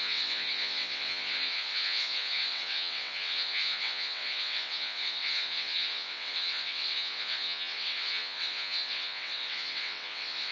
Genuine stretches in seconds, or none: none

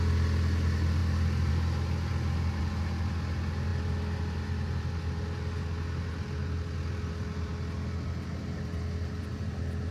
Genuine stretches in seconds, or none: 0.0-9.9

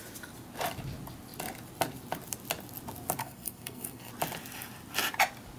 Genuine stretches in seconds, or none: 0.0-3.2; 4.1-5.6